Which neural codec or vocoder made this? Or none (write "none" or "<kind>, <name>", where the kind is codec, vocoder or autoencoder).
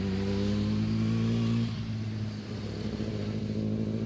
none